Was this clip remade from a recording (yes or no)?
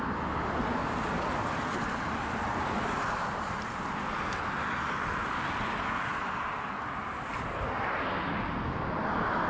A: no